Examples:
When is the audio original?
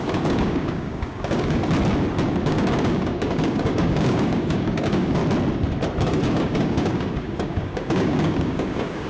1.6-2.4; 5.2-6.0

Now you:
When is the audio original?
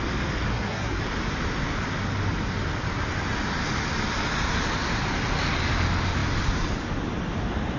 0.0-0.5; 1.0-7.8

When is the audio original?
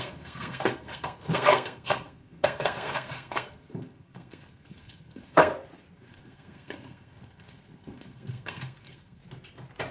5.5-6.1; 9.2-9.9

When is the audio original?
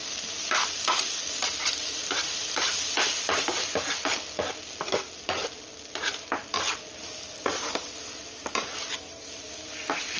0.0-10.2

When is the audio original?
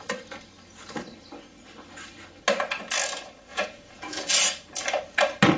0.0-3.5; 4.3-5.6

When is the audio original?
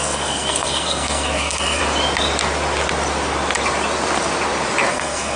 1.8-4.9